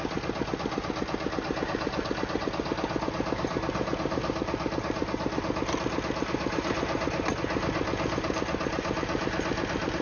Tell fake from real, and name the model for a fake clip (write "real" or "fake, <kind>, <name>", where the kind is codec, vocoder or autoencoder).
real